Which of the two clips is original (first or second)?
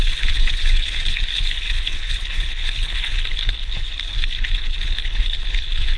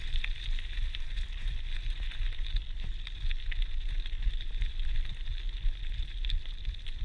second